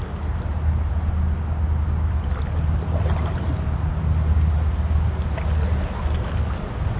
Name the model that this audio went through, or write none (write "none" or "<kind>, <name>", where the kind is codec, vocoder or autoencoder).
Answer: none